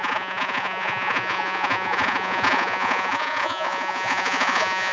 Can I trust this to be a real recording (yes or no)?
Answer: no